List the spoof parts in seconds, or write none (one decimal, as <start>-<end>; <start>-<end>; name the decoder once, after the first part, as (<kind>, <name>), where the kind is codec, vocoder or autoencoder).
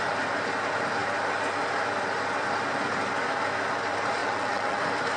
4.2-4.8 (vocoder, WaveNeXt)